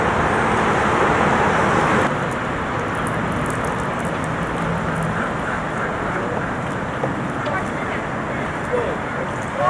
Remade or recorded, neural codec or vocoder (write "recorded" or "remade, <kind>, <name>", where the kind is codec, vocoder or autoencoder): recorded